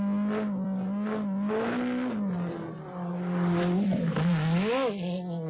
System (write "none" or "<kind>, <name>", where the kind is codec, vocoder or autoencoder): none